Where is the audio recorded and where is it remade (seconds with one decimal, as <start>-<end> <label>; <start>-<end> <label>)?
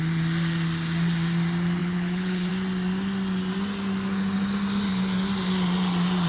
0.0-1.8 recorded; 1.8-2.5 remade; 2.5-6.3 recorded